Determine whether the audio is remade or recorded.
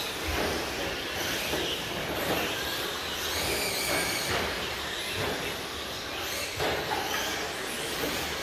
recorded